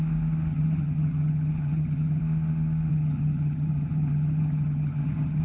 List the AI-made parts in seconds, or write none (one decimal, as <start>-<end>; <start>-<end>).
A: 0.5-2.2; 2.9-5.4